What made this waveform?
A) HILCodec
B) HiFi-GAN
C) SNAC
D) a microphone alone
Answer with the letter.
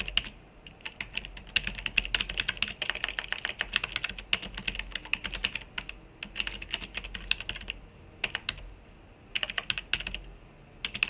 D